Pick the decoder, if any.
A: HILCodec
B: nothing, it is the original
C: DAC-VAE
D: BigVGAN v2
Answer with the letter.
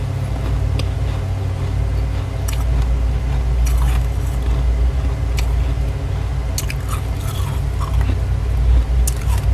B